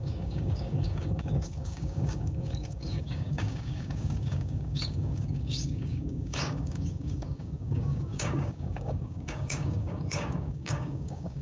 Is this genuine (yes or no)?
no